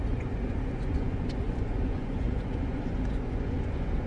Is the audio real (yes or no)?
no